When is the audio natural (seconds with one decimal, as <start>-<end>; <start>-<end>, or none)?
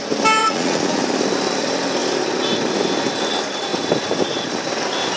0.0-0.4; 1.0-5.2